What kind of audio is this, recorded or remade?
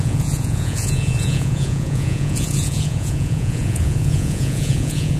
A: remade